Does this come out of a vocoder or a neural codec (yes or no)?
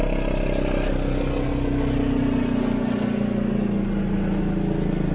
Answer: no